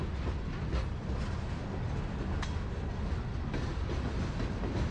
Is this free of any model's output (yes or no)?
yes